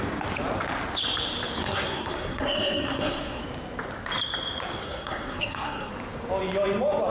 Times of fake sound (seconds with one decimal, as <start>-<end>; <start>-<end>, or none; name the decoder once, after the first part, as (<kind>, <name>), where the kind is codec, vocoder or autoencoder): 1.6-3.4 (codec, SNAC); 4.8-5.9

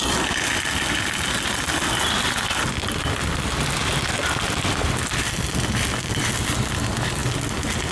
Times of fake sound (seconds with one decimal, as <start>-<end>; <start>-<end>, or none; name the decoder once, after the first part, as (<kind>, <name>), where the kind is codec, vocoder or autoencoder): none

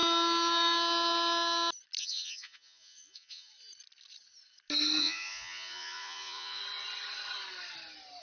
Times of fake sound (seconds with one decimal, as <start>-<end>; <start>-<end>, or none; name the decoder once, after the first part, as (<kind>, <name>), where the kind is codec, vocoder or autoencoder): 2.0-3.5 (vocoder, Vocos); 5.0-6.6

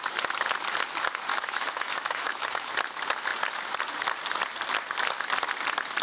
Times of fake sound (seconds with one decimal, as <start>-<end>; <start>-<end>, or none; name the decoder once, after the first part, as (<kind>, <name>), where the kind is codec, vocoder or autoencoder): 1.3-2.7 (autoencoder, DAC-VAE)

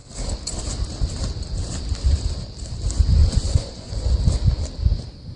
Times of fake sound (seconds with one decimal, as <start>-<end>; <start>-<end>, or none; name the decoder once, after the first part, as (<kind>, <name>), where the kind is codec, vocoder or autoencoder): 3.2-4.1 (vocoder, Vocos)

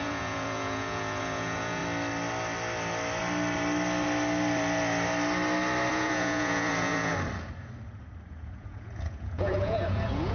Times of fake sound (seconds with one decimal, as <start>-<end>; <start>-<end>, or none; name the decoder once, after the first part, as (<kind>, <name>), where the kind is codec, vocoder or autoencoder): 0.0-1.8 (vocoder, Vocos); 5.9-7.1; 8.3-10.3

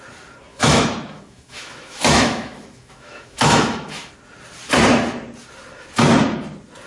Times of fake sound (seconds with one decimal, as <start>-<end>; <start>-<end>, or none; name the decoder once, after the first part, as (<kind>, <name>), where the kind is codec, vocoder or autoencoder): 0.5-4.1 (autoencoder, DAC-VAE)